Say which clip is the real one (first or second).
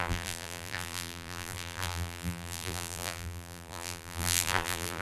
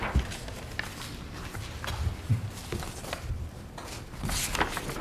second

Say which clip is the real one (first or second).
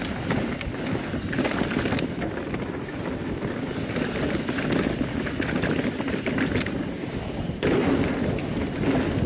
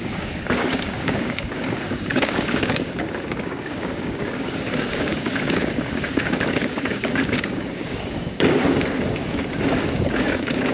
first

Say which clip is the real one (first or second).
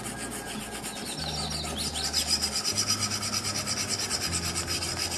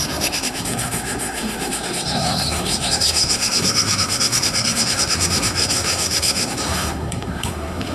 first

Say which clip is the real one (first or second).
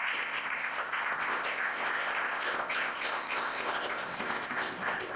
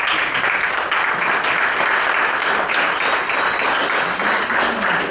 second